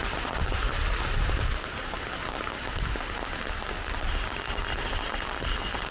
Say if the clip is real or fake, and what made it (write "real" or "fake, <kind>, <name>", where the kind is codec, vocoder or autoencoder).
real